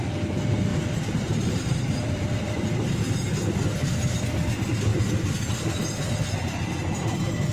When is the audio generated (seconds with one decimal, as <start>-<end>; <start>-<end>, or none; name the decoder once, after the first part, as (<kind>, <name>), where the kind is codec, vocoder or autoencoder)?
0.7-3.1 (vocoder, BigVGAN v2)